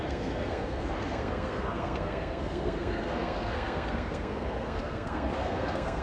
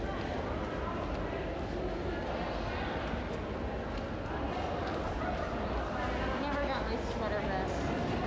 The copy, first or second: first